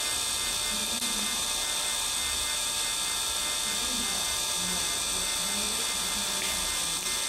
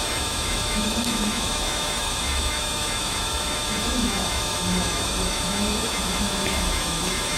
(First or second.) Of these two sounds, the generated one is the second